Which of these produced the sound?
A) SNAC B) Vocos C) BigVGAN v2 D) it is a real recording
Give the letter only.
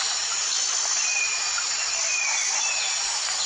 D